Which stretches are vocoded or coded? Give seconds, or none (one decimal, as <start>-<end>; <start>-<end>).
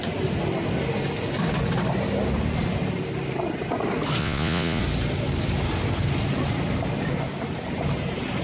4.2-4.8